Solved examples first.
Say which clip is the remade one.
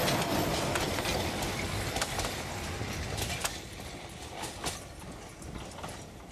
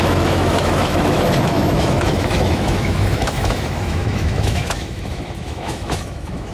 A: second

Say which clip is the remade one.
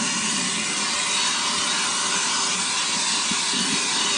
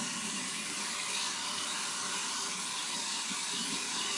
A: second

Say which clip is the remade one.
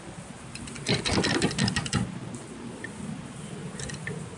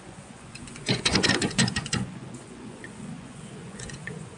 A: second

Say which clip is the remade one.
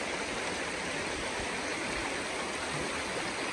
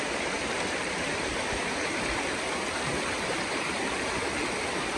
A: second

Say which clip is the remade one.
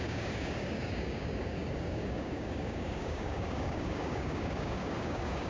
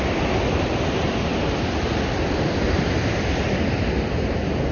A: first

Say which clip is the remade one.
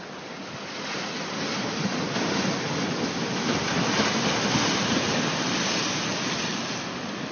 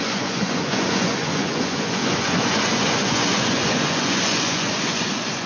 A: second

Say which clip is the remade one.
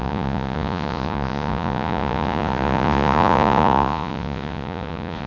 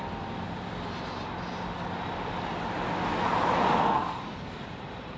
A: first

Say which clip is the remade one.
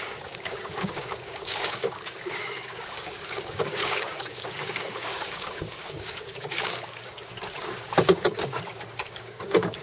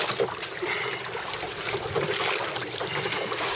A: first